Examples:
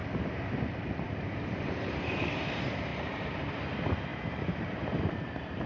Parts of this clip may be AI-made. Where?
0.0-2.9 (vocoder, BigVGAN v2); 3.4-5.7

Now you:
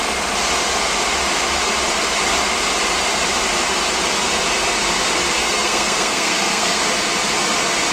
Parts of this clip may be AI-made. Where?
5.4-6.8 (codec, SNAC)